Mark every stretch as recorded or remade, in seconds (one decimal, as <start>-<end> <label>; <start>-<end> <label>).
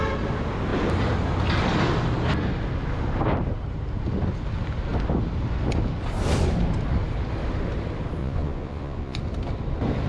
0.0-8.2 recorded; 8.2-9.2 remade; 9.2-10.1 recorded